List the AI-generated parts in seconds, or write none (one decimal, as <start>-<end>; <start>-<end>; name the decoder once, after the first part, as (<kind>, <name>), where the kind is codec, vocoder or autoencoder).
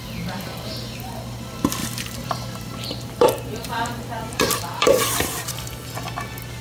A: 1.8-5.5 (vocoder, BigVGAN v2)